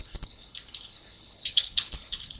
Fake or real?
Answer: fake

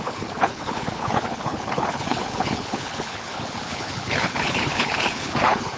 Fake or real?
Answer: fake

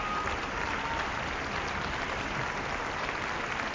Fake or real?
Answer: real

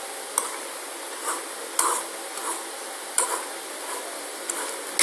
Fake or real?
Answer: real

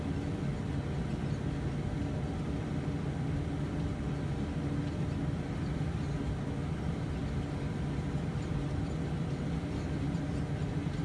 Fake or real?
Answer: real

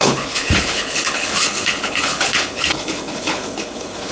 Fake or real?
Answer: fake